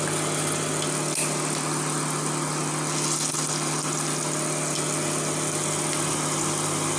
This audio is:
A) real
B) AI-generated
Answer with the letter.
A